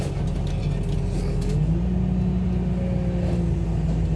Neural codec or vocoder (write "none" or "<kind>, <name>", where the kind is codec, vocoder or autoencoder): none